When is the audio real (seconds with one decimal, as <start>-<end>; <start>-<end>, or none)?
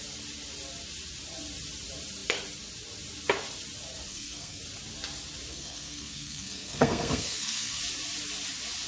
0.0-4.1; 4.6-5.5; 7.8-8.9